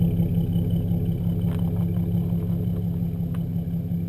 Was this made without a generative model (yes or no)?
yes